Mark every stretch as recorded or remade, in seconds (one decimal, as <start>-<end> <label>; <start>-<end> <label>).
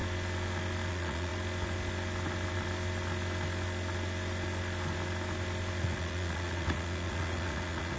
0.0-0.9 recorded; 0.9-1.3 remade; 1.3-5.8 recorded; 5.8-8.0 remade